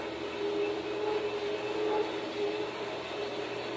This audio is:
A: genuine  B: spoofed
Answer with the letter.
A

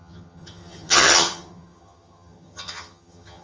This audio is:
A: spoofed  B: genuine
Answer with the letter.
A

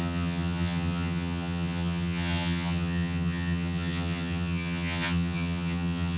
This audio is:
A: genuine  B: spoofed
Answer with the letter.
B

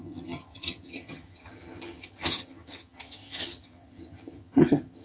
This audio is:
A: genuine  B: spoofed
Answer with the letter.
B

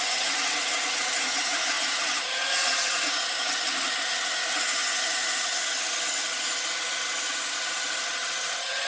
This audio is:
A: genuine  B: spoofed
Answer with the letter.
B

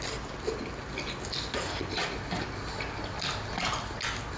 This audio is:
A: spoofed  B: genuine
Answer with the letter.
B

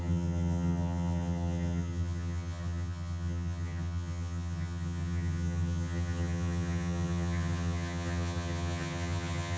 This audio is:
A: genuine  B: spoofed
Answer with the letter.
B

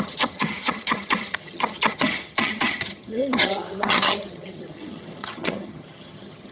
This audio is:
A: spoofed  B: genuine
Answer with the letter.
A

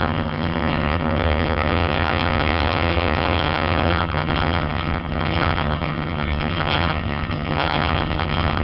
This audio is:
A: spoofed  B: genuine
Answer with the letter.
A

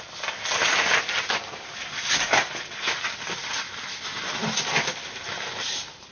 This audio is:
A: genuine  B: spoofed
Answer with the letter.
A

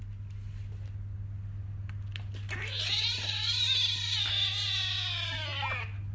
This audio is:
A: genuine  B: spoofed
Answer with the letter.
A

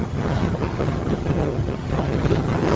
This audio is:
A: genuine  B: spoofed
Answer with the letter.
B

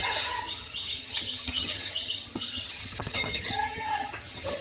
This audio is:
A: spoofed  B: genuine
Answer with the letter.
A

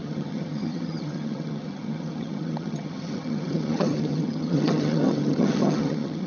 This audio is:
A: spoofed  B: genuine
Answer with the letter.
A